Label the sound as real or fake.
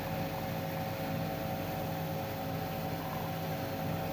real